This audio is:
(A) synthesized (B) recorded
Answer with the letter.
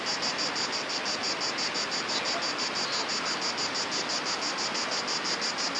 B